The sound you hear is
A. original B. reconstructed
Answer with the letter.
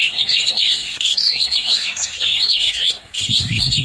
B